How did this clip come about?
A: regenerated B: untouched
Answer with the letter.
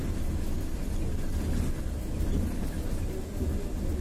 B